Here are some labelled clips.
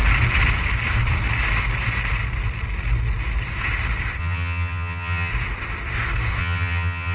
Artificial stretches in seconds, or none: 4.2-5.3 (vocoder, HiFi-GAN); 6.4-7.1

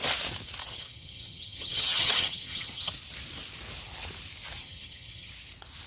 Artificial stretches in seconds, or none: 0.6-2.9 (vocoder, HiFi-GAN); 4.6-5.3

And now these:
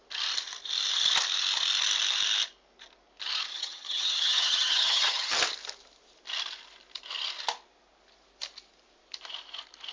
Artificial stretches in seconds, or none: 3.5-5.4 (vocoder, HiFi-GAN)

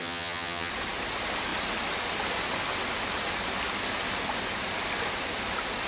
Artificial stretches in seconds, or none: 0.0-0.7 (vocoder, HiFi-GAN)

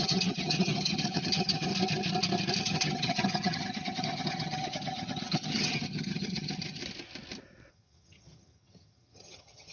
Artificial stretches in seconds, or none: 0.0-1.7 (vocoder, HiFi-GAN); 2.6-6.8; 7.7-9.7

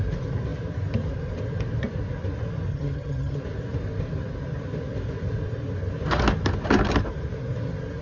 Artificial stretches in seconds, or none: 2.7-3.4 (vocoder, HiFi-GAN)